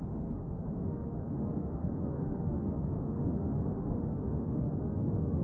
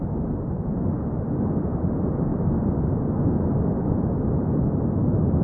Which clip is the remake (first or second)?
first